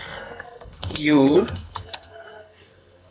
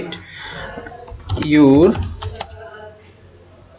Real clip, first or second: second